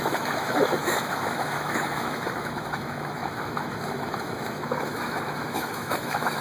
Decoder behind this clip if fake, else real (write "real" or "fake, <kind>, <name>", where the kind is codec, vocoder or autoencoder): fake, autoencoder, DAC-VAE